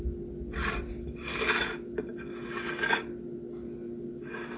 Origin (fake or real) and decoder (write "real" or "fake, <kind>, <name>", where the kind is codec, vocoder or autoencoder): real